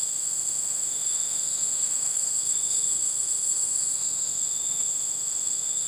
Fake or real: fake